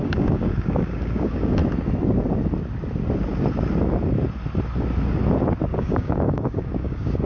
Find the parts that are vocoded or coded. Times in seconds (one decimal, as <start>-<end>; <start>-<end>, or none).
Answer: 0.0-1.6; 5.7-7.3